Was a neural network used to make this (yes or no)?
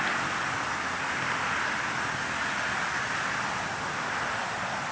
no